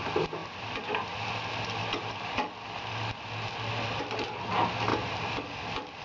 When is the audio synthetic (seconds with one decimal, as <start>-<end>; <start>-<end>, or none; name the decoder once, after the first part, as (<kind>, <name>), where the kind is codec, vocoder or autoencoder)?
none